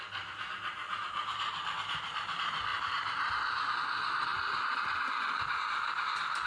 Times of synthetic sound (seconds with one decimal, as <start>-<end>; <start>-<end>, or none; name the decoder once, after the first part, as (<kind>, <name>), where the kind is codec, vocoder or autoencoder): 2.7-3.7 (vocoder, BigVGAN v2)